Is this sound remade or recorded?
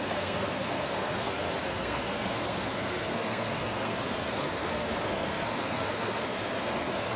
remade